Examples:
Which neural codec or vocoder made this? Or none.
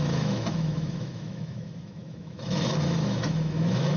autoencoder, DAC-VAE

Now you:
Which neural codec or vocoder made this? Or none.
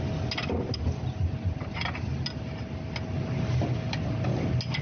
none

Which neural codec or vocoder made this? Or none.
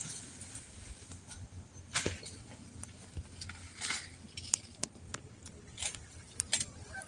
none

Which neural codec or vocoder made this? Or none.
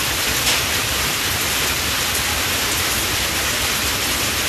vocoder, BigVGAN v2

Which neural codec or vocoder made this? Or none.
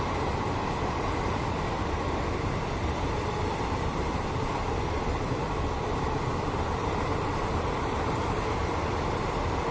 vocoder, BigVGAN v2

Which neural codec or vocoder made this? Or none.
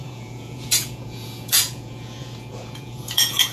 vocoder, Vocos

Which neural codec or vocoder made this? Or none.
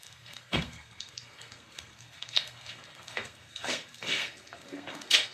codec, SNAC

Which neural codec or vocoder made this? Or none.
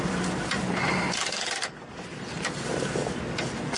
none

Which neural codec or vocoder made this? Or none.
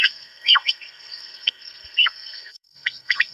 codec, SNAC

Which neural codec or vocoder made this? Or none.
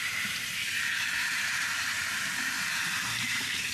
vocoder, BigVGAN v2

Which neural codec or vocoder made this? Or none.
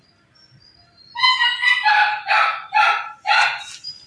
none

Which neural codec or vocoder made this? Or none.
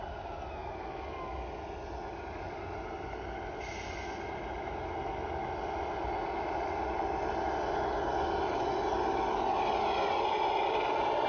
none